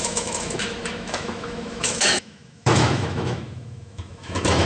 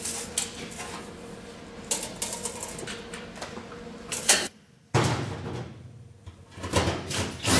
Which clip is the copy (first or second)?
first